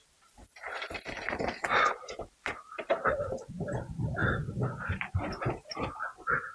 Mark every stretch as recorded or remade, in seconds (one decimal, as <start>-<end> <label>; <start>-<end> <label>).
0.0-4.2 remade; 4.2-4.9 recorded; 4.9-6.5 remade

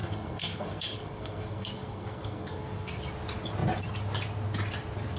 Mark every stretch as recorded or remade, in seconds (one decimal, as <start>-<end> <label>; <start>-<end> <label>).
0.0-3.0 remade; 3.0-5.2 recorded